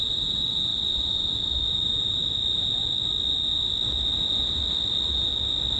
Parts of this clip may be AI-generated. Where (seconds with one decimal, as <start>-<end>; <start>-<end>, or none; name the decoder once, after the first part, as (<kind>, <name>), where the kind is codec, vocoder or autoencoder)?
0.0-0.7 (vocoder, BigVGAN v2); 1.7-2.2